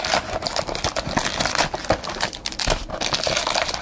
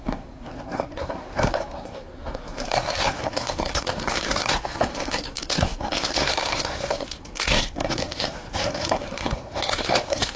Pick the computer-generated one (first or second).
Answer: second